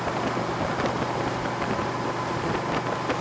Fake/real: real